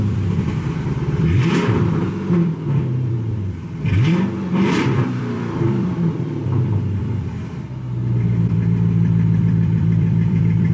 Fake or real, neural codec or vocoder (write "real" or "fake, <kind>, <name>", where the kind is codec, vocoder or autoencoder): fake, vocoder, BigVGAN v2